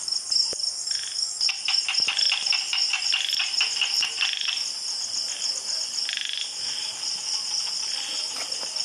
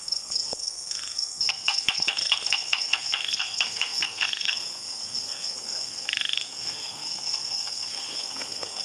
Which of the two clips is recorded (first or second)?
first